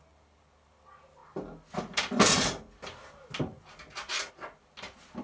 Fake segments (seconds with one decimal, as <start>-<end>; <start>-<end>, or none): none